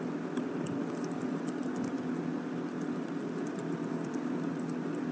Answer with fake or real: real